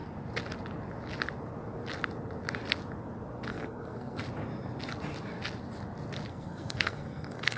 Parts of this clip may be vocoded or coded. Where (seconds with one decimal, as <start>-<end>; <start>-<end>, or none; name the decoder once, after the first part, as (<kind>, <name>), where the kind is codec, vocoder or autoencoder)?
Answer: 3.5-4.2 (codec, SNAC); 6.3-7.6